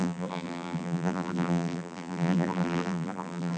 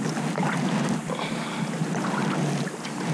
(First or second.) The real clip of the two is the second